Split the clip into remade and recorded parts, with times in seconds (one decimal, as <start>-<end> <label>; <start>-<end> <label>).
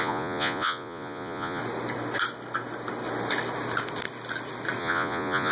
0.0-1.6 remade; 1.6-4.8 recorded; 4.8-5.5 remade